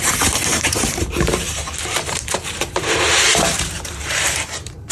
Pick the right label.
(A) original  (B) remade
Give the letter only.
B